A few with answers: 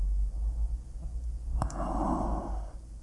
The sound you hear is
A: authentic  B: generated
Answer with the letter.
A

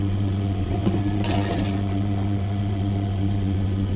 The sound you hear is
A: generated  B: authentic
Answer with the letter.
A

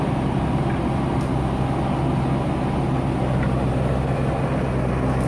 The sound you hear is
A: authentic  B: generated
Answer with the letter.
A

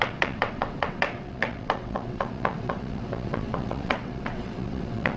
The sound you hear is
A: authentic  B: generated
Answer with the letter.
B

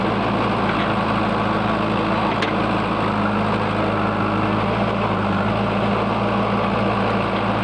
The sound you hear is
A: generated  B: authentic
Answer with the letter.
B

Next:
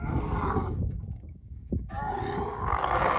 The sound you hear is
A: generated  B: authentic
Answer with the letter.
A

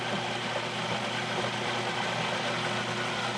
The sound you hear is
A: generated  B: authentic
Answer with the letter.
B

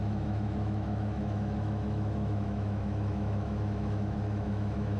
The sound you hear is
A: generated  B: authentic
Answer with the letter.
A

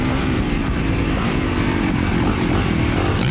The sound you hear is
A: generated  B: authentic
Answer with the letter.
A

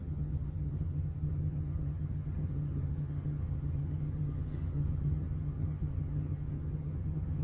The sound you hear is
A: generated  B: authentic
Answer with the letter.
A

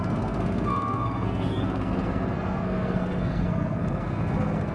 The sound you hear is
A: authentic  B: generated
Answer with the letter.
B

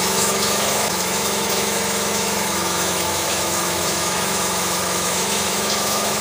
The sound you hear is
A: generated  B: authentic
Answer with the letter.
A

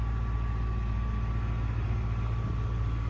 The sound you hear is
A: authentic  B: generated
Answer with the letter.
A